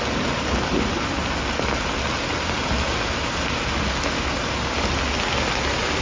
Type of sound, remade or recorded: recorded